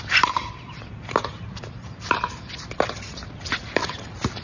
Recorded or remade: remade